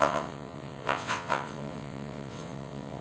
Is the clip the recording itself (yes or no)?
no